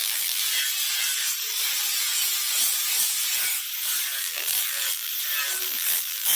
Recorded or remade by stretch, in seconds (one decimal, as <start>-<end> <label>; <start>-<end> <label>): 0.0-0.4 remade; 0.4-4.2 recorded; 4.2-5.1 remade; 5.1-5.6 recorded; 5.6-6.4 remade